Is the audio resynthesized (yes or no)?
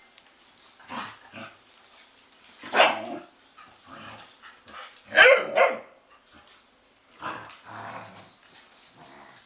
no